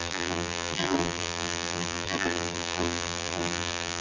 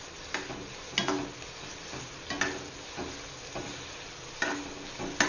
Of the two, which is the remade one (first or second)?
first